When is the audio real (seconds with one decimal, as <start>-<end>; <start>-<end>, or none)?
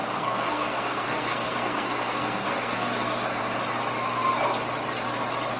3.4-5.6